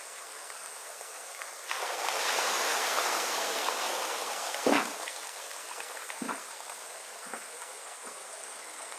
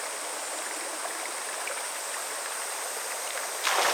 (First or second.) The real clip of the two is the second